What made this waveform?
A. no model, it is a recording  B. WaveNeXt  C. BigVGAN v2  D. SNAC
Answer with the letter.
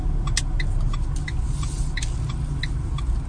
A